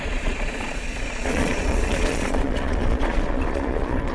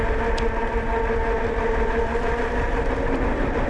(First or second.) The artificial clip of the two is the first